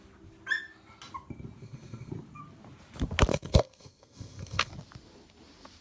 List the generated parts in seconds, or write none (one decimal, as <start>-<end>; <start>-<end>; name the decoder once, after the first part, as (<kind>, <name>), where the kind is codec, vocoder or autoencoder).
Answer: 1.6-2.1 (codec, SNAC); 3.3-4.7

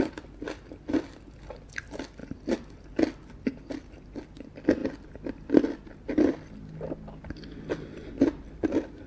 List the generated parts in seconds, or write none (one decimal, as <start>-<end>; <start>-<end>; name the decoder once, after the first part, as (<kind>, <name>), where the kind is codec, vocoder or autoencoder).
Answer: none

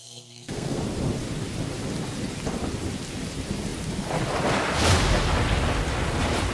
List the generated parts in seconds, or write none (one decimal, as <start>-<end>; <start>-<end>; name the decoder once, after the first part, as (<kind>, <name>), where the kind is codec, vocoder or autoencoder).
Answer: 0.0-0.8 (codec, SNAC)

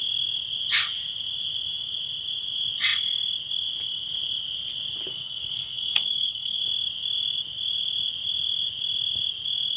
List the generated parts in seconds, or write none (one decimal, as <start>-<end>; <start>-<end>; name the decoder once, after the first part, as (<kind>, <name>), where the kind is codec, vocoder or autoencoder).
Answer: 5.1-6.6 (codec, SNAC)

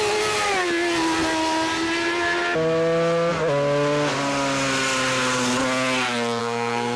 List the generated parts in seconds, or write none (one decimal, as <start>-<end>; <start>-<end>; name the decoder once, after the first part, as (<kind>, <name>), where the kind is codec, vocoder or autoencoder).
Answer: 6.4-7.0 (codec, SNAC)

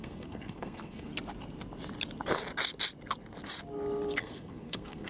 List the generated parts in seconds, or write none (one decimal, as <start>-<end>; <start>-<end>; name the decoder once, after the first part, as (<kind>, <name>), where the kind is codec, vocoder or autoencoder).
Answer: 0.0-1.1 (codec, SNAC); 4.2-5.1

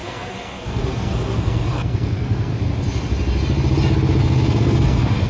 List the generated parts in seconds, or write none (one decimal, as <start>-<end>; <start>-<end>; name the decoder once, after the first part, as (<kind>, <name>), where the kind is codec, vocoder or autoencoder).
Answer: 0.0-2.5 (codec, SNAC); 4.2-5.3